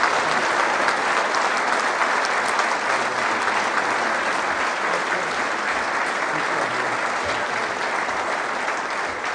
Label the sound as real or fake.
real